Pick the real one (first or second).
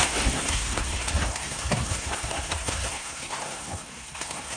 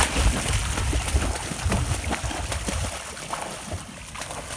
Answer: second